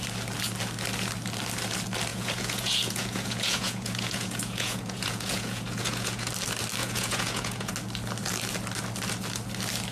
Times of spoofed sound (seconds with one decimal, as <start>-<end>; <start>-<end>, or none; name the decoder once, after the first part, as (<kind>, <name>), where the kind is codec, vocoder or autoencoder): 2.1-6.3 (vocoder, Vocos); 6.8-7.7